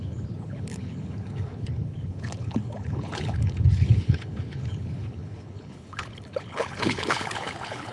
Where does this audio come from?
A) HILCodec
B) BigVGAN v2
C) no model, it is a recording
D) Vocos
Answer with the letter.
A